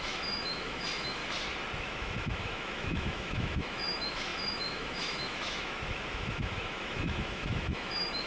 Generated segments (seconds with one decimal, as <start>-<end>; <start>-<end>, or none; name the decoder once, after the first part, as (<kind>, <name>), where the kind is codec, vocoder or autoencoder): 0.0-1.2 (autoencoder, DAC-VAE); 1.8-8.3